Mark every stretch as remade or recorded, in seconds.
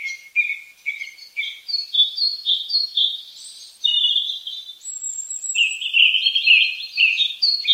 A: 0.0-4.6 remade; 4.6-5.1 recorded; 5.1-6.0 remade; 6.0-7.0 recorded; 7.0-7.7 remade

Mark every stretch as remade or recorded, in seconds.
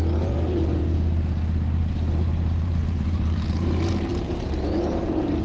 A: 0.0-0.8 remade; 0.8-1.9 recorded; 1.9-5.4 remade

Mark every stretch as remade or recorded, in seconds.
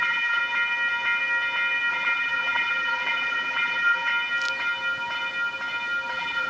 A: 0.0-0.4 remade; 0.4-1.9 recorded; 1.9-4.1 remade; 4.1-6.1 recorded; 6.1-6.5 remade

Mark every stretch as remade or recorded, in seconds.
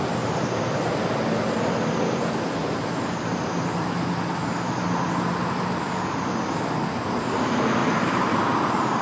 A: 0.0-2.6 recorded; 2.6-3.4 remade; 3.4-7.8 recorded; 7.8-9.0 remade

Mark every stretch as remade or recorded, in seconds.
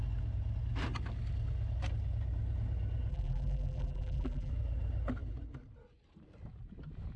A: 0.0-3.1 recorded; 3.1-4.5 remade; 4.5-7.2 recorded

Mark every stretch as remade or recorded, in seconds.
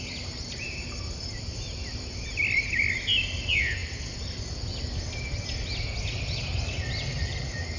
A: 0.0-3.8 recorded; 3.8-4.4 remade; 4.4-7.8 recorded